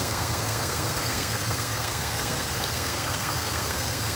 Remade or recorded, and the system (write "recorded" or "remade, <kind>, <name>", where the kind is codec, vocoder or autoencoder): remade, codec, SNAC